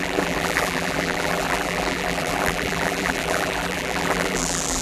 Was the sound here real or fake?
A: fake